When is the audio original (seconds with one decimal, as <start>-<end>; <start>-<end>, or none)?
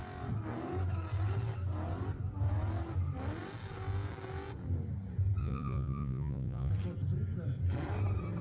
0.0-5.4; 6.7-8.4